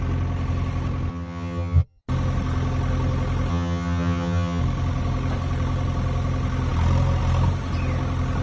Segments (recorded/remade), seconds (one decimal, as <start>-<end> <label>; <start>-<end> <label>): 0.0-1.1 recorded; 1.1-2.0 remade; 2.0-3.5 recorded; 3.5-4.6 remade; 4.6-8.4 recorded